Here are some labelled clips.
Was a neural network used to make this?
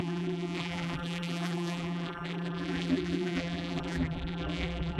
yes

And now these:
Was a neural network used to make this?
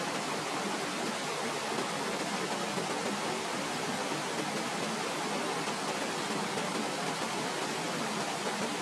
no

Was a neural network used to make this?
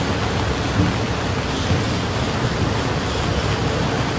no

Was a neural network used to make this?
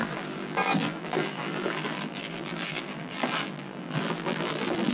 yes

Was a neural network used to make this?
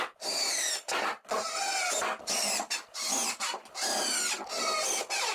yes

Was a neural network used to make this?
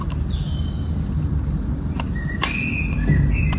yes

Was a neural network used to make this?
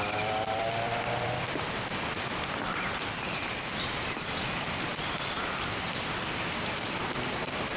yes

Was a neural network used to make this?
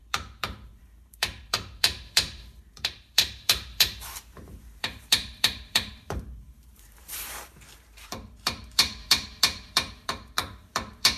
yes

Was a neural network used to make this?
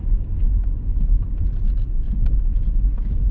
no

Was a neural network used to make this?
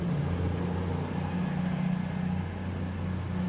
no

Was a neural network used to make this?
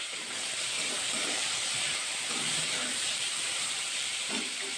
yes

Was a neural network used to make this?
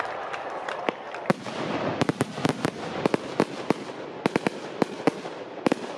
yes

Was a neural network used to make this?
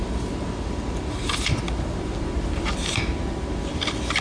yes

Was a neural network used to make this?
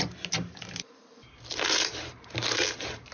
yes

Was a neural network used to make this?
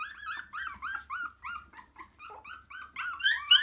no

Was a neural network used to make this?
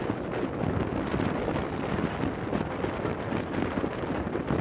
no